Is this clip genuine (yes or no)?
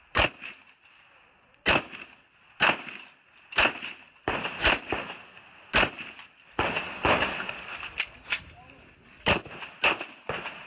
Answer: yes